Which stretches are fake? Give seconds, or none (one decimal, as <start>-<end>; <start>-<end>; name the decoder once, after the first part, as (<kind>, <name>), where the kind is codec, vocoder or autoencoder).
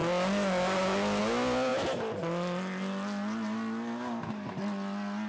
none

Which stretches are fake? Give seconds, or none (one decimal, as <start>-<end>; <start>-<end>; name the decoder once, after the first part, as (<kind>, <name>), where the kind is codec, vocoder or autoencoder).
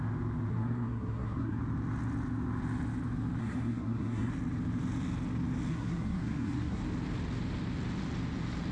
0.5-1.6 (codec, SNAC); 3.4-4.3; 5.7-6.8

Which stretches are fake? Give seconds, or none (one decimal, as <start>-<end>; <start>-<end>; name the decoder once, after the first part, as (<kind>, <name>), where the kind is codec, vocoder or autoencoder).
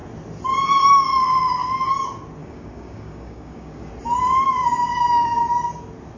2.4-3.9 (codec, DAC); 4.9-5.4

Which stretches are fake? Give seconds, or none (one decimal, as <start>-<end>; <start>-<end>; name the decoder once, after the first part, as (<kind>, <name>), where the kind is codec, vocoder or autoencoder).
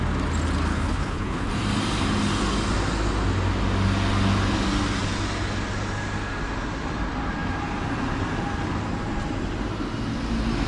0.7-1.5 (codec, HILCodec)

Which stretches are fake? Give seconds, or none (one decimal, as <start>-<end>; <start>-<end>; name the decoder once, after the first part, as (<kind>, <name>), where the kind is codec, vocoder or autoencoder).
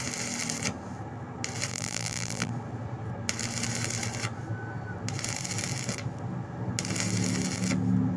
1.7-2.5 (vocoder, BigVGAN v2)